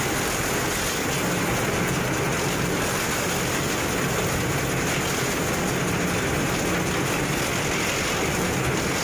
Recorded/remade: recorded